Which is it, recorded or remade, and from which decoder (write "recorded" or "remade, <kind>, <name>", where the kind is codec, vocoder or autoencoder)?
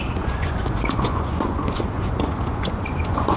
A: remade, vocoder, Vocos